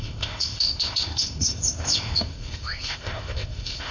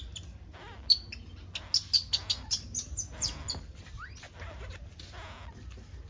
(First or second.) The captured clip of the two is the second